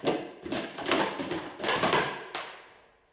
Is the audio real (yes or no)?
yes